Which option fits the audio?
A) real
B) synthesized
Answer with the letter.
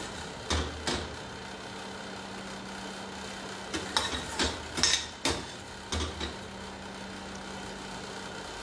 A